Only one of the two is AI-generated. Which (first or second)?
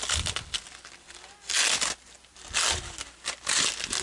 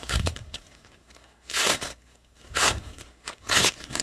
second